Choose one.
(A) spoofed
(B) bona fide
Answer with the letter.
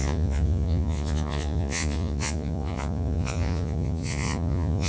A